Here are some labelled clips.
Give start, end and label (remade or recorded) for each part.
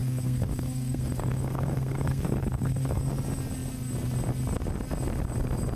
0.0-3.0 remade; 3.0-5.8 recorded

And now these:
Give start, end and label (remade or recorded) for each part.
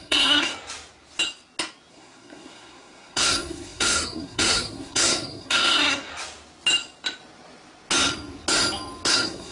0.0-0.5 remade; 0.5-1.9 recorded; 1.9-6.1 remade; 6.1-9.1 recorded; 9.1-9.5 remade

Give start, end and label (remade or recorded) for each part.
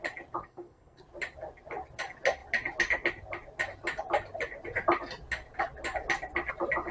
0.0-0.4 recorded; 0.4-1.0 remade; 1.0-6.9 recorded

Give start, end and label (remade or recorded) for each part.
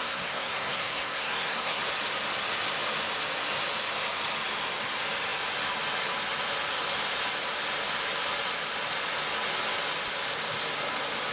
0.0-1.8 remade; 1.8-11.3 recorded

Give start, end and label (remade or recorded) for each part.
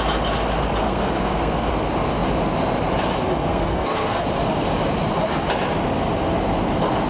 0.0-0.8 recorded; 0.8-1.7 remade; 1.7-3.5 recorded; 3.5-4.2 remade; 4.2-7.1 recorded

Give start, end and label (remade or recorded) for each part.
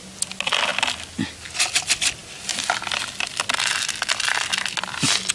0.0-5.3 recorded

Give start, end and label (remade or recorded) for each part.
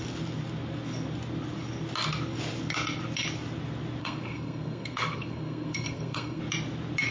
0.0-4.0 recorded; 4.0-6.4 remade; 6.4-7.1 recorded